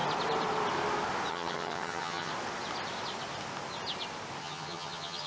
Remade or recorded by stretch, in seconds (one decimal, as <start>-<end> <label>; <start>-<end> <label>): 0.0-1.3 recorded; 1.3-2.3 remade; 2.3-4.4 recorded; 4.4-5.3 remade